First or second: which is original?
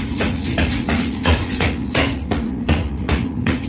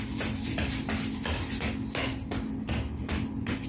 second